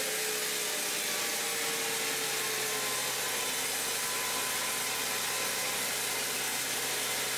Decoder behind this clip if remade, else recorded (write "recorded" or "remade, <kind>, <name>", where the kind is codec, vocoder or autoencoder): recorded